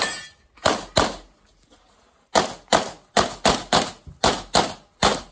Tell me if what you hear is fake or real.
real